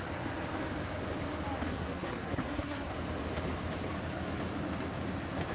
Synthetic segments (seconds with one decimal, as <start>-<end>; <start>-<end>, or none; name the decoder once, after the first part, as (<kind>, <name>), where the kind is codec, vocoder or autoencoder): 1.7-2.9 (codec, SNAC)